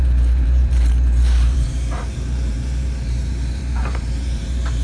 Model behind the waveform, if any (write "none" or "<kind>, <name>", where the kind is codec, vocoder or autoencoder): vocoder, BigVGAN v2